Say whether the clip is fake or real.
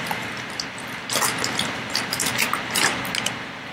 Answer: real